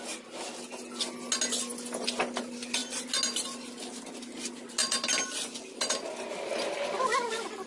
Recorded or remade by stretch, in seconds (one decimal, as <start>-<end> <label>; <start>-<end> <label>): 0.0-7.7 recorded